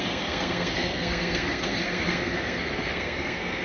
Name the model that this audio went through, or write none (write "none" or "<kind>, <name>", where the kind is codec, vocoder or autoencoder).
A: codec, SNAC